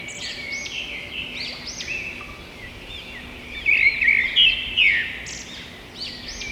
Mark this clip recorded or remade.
recorded